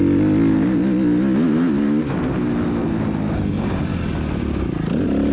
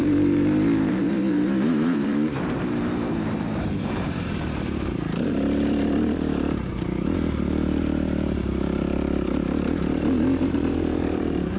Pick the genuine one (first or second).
first